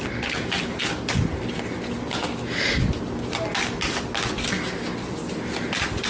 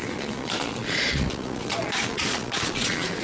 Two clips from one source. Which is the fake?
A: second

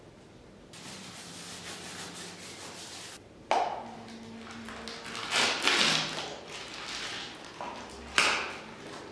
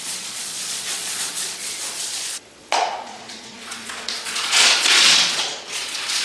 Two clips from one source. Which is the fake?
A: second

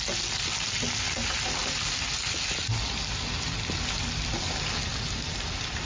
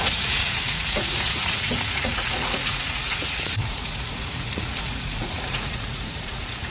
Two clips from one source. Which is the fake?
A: second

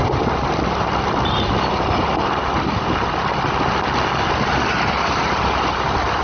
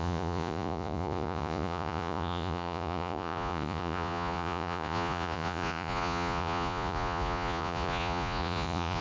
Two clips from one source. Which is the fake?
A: second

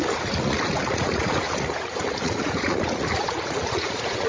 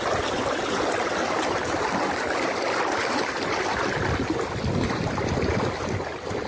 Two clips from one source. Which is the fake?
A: first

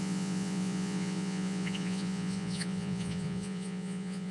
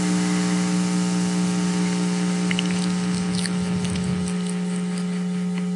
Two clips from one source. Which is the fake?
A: first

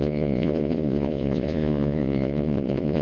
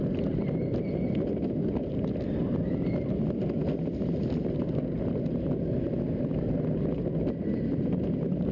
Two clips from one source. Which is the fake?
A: first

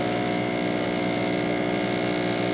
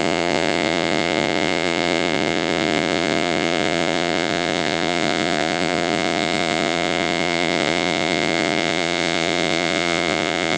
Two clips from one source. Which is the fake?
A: second